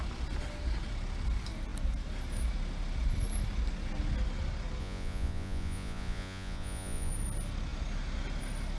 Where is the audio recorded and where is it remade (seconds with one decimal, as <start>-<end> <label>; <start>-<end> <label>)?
0.0-4.8 recorded; 4.8-7.1 remade; 7.1-8.8 recorded